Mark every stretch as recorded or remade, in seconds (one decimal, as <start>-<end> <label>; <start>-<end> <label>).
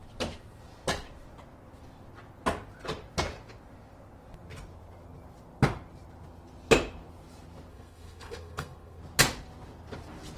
0.0-7.7 recorded; 7.7-9.0 remade; 9.0-10.4 recorded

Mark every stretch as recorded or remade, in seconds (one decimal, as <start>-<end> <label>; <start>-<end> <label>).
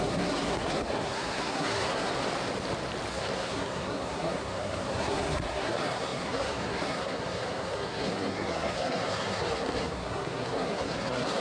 0.0-2.1 remade; 2.1-3.1 recorded; 3.1-11.4 remade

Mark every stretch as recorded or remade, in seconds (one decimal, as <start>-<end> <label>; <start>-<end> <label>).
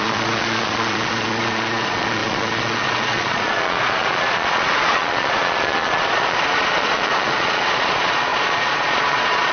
0.0-9.5 remade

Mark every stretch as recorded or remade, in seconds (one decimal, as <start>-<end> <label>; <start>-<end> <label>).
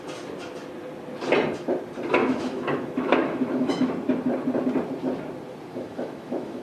0.0-2.2 recorded; 2.2-3.9 remade; 3.9-5.7 recorded; 5.7-6.6 remade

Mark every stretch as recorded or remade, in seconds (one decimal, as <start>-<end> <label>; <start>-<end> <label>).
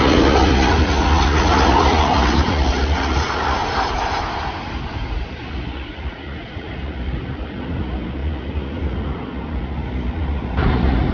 0.0-3.6 remade; 3.6-5.3 recorded; 5.3-11.1 remade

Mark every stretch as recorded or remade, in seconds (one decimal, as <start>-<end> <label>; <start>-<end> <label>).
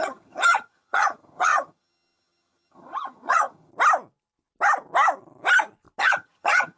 0.0-3.7 remade; 3.7-6.0 recorded; 6.0-6.8 remade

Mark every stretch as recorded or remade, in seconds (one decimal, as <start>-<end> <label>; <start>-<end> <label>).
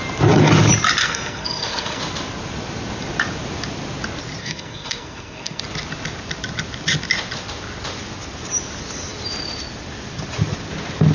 0.0-1.0 recorded; 1.0-2.0 remade; 2.0-4.4 recorded; 4.4-5.6 remade; 5.6-11.1 recorded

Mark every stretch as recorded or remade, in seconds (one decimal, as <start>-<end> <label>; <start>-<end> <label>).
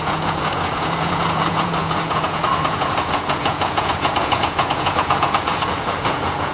0.0-6.5 remade